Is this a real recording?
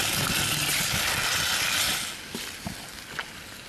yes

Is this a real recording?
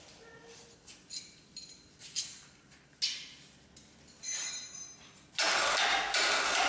yes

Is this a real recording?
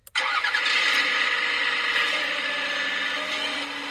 yes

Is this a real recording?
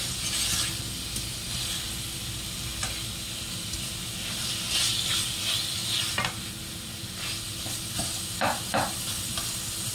yes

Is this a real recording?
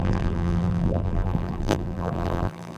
no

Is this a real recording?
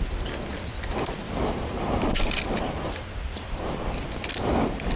yes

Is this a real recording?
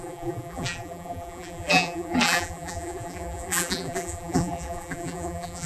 no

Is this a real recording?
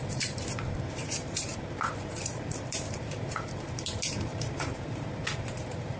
no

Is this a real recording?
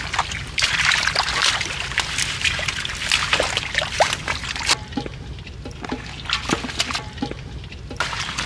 yes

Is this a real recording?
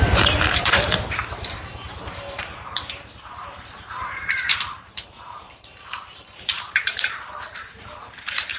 no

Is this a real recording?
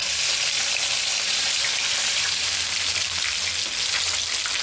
yes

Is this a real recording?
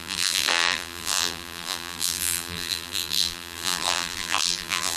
no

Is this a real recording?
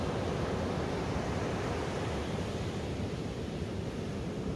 yes